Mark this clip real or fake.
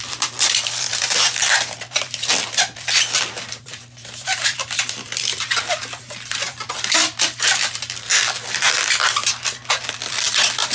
fake